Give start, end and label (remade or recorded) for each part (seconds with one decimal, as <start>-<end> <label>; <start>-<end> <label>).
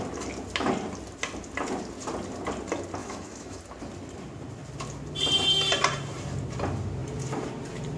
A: 0.0-3.0 recorded; 3.0-3.6 remade; 3.6-8.0 recorded